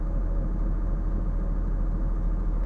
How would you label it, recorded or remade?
recorded